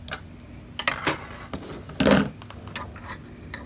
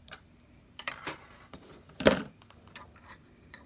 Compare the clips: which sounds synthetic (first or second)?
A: second